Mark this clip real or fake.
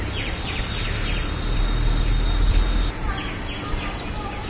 real